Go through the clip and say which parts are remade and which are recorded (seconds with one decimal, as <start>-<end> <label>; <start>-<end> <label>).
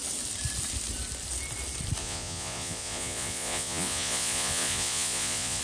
0.0-2.0 recorded; 2.0-5.6 remade